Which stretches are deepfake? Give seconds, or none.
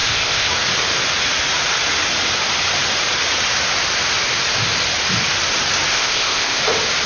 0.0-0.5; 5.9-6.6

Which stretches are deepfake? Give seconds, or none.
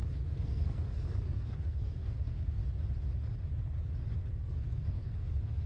0.0-2.6; 4.2-5.7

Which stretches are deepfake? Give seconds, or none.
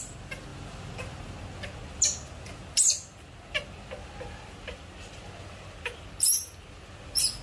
none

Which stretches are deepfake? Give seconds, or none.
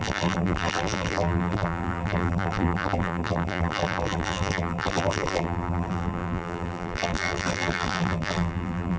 0.0-9.0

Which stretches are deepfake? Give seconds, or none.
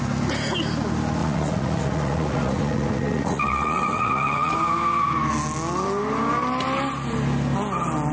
1.2-4.5